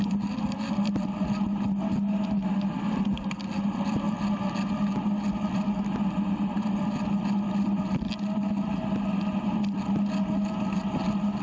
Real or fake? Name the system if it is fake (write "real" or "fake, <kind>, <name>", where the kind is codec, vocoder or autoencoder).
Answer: real